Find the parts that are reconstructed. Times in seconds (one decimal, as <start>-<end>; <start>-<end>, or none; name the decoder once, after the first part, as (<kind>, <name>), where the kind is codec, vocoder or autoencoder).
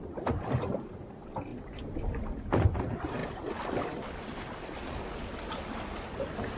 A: none